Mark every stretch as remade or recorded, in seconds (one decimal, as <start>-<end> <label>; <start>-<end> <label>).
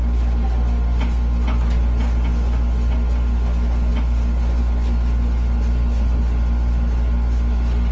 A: 0.0-3.9 recorded; 3.9-4.6 remade; 4.6-7.9 recorded